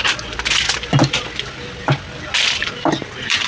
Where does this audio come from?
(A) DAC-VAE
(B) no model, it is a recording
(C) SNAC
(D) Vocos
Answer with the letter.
B